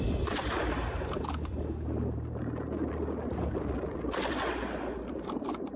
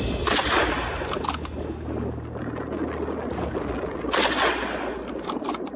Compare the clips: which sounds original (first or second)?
second